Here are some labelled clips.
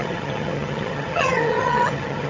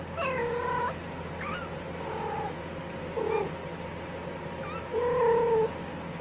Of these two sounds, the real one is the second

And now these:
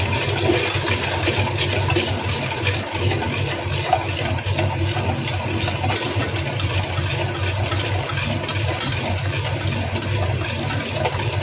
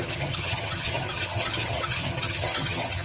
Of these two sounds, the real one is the first